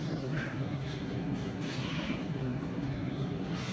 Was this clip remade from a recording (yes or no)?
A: yes